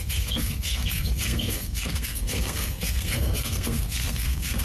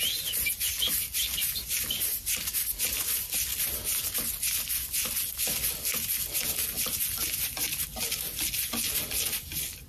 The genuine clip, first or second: second